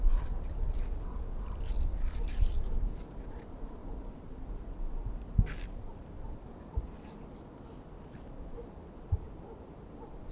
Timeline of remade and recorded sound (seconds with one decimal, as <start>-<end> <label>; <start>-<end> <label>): 0.0-10.3 recorded